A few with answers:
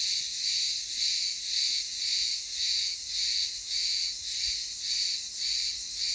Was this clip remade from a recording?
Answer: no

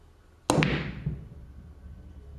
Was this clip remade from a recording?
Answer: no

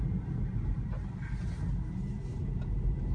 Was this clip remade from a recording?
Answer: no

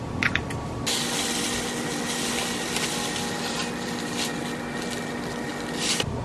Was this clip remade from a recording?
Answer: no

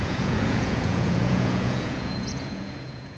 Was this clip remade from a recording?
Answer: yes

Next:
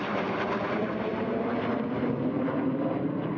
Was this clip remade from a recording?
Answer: no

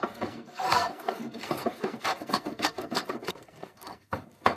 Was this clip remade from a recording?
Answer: yes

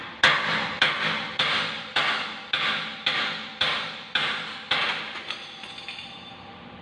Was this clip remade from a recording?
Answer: no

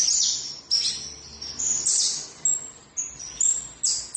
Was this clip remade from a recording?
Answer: no